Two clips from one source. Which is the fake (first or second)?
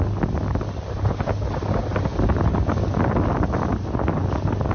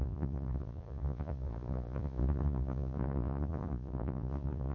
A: second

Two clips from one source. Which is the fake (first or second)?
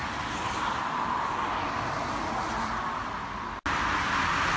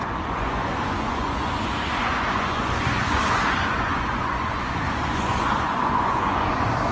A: second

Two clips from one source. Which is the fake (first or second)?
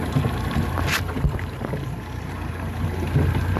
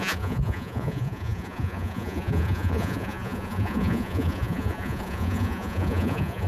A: second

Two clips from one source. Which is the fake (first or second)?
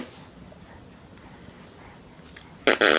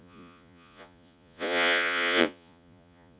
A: second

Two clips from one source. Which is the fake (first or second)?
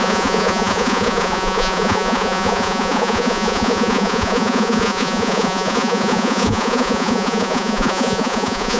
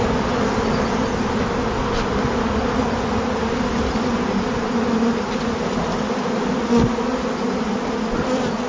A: first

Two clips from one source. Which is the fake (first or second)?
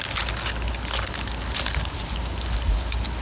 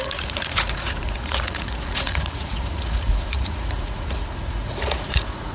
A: second